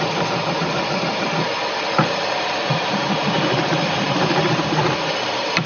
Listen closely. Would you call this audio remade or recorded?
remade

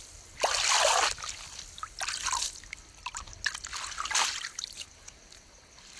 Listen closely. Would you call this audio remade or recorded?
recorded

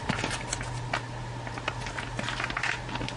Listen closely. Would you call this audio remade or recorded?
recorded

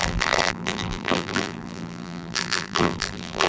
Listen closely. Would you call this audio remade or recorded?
remade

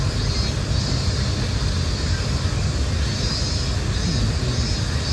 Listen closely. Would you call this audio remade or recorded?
recorded